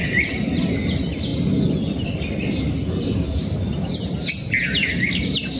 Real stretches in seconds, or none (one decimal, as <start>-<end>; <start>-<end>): 0.0-5.6